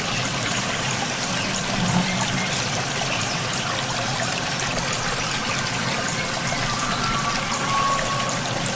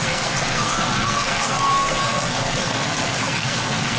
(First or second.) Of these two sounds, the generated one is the second